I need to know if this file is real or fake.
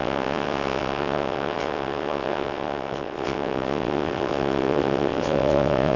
fake